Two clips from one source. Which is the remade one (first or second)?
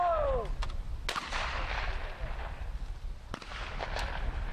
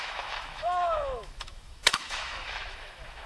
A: second